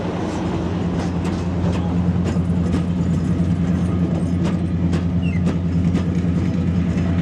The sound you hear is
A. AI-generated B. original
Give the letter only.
B